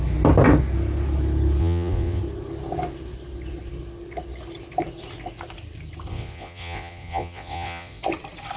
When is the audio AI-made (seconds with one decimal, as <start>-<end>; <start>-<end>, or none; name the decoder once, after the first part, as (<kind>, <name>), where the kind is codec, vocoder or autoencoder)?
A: 1.6-2.2 (vocoder, Vocos); 6.1-8.0